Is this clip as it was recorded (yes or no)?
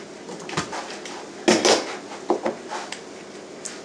yes